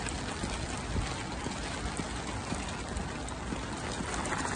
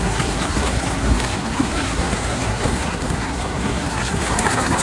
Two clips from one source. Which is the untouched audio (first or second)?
first